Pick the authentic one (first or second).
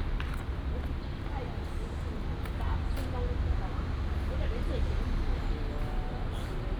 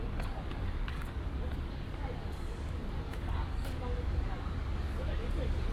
first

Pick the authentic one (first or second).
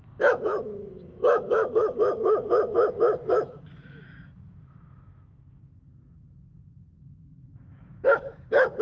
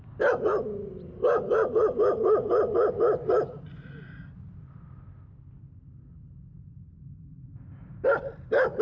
second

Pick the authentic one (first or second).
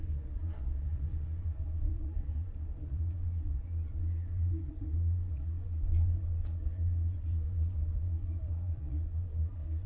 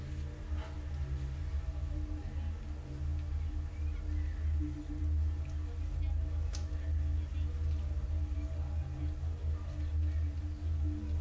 second